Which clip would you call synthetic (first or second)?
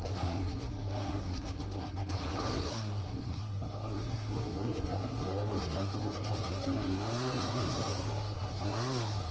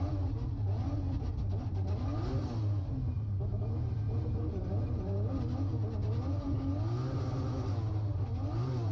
first